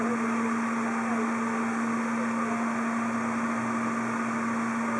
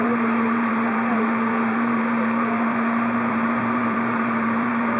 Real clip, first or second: first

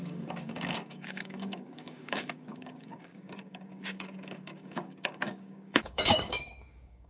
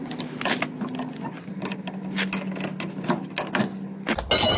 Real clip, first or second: second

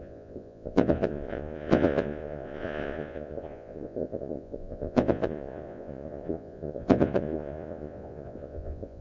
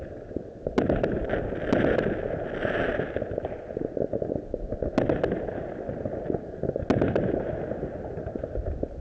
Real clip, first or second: second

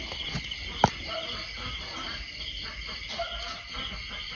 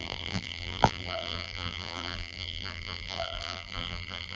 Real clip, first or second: first